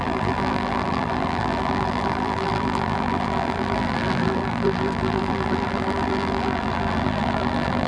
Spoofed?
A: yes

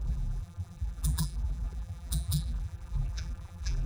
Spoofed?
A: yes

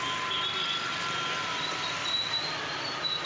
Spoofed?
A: no